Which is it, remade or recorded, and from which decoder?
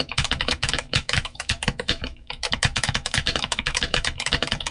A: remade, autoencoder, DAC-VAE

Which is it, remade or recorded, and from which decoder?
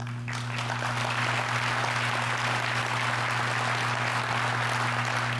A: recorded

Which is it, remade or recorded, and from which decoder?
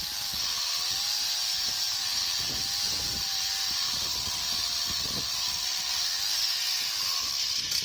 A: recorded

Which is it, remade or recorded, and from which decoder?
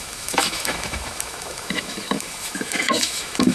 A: remade, autoencoder, DAC-VAE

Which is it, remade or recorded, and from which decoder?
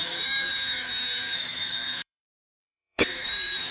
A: remade, autoencoder, DAC-VAE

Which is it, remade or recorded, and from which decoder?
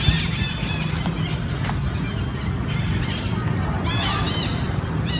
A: recorded